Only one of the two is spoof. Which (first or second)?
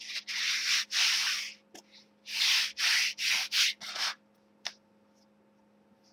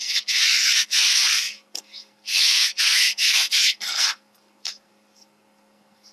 second